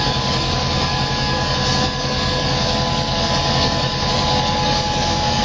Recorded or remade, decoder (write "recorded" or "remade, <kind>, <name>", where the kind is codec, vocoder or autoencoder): remade, codec, DAC